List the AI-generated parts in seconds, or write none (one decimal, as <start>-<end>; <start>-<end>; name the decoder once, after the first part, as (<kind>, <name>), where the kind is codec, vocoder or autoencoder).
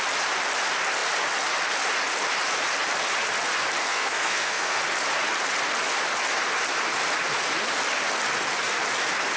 3.8-4.8 (codec, SNAC)